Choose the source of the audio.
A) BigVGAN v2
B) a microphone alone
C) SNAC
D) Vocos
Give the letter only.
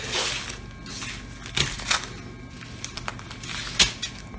B